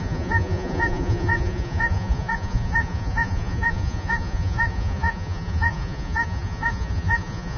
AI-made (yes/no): yes